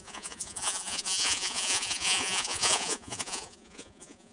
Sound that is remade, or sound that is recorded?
remade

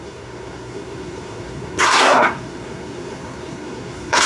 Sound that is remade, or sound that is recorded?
remade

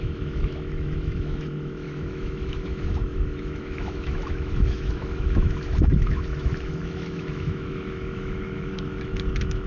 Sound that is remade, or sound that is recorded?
remade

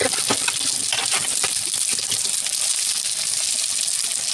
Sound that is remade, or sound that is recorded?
recorded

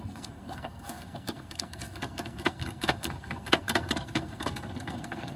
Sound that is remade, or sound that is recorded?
remade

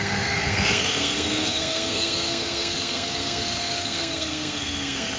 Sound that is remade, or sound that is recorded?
remade